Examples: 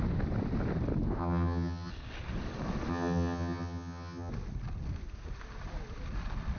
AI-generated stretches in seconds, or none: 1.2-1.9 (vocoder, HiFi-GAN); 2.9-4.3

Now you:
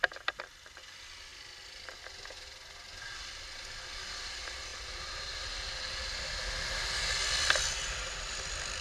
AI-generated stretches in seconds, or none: none

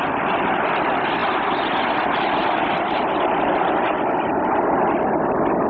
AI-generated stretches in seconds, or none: none

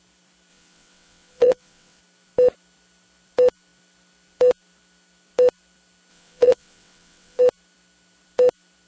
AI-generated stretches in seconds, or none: 0.5-2.0 (vocoder, WaveNeXt); 6.1-7.4

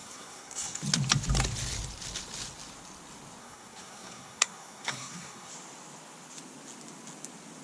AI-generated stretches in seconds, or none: 0.0-0.8 (codec, SNAC); 3.4-5.5